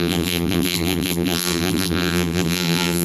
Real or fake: fake